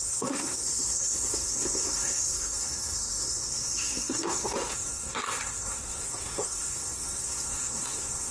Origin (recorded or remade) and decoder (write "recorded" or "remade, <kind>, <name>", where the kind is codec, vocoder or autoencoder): remade, codec, SNAC